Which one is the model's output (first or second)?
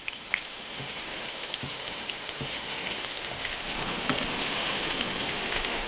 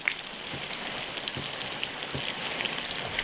first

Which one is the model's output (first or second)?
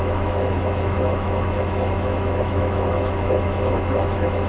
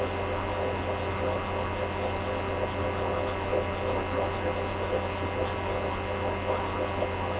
first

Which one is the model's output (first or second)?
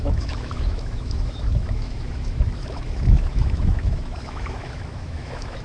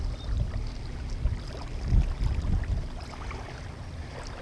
first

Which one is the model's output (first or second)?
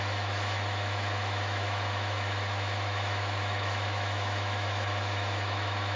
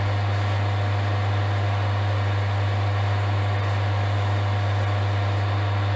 first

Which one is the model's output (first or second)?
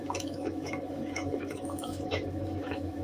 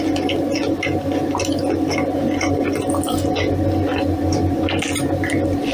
first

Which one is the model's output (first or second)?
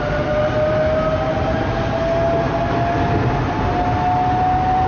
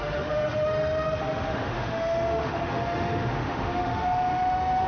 second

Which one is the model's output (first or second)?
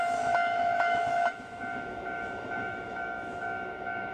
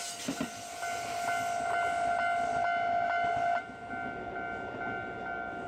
first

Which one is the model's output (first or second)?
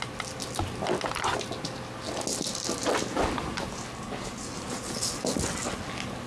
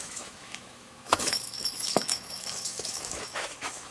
second